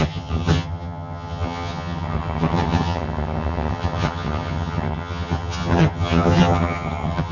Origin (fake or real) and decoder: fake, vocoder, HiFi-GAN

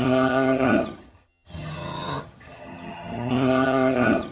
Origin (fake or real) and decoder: fake, vocoder, HiFi-GAN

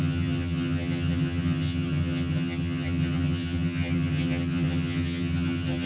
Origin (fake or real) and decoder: fake, vocoder, HiFi-GAN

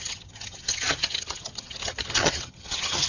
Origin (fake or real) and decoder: fake, vocoder, HiFi-GAN